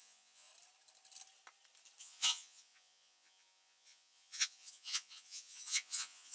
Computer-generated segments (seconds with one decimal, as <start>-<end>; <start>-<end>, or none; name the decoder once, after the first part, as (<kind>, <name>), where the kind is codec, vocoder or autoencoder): 0.0-0.5 (vocoder, Vocos); 2.0-6.3